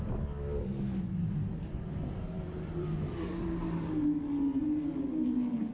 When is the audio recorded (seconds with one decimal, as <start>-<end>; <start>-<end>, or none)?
0.0-1.6; 3.2-5.7